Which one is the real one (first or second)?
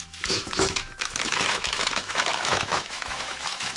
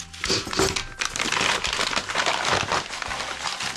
second